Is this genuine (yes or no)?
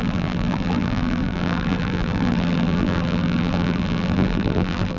no